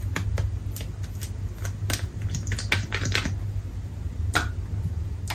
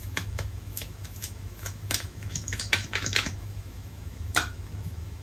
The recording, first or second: first